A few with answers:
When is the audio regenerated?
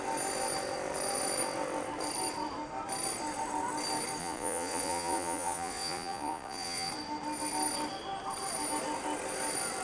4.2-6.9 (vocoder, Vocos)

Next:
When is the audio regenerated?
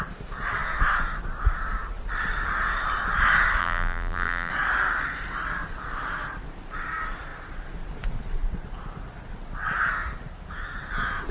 3.6-4.5 (vocoder, BigVGAN v2)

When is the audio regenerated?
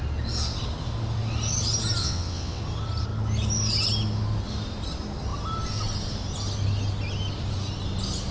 2.0-2.6 (vocoder, WaveNeXt)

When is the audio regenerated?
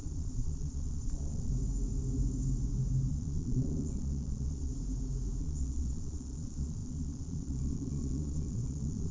0.0-1.5 (vocoder, Vocos); 3.1-4.7; 5.4-9.1